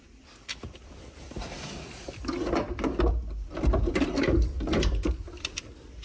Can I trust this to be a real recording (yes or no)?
yes